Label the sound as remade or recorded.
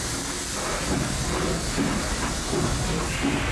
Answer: recorded